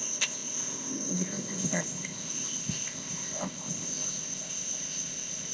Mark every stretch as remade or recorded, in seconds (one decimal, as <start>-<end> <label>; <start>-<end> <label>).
0.0-5.5 remade